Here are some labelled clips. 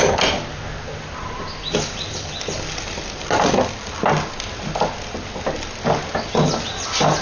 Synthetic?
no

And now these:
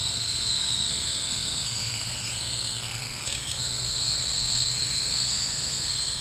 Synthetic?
yes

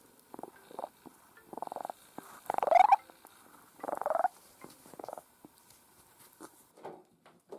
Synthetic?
no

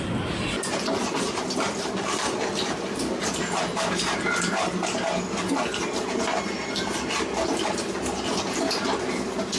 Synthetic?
no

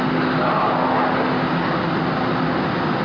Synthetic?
no